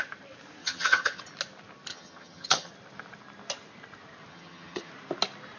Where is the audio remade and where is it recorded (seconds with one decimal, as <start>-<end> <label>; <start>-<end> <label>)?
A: 0.0-0.6 recorded; 0.6-1.2 remade; 1.2-1.9 recorded; 1.9-2.7 remade; 2.7-4.3 recorded; 4.3-4.9 remade; 4.9-5.6 recorded